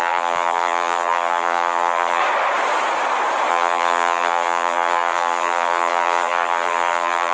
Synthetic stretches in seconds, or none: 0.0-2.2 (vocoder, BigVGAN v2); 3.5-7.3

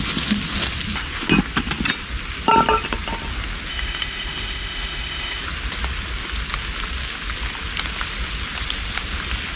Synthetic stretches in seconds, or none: 3.7-5.4 (autoencoder, DAC-VAE)

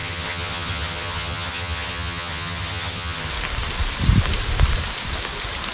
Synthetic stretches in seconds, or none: 0.0-3.3 (vocoder, HiFi-GAN)

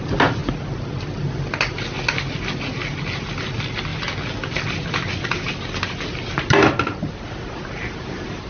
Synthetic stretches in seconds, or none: none